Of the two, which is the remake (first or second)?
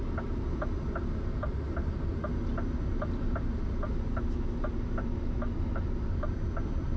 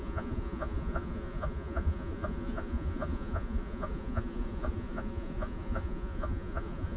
second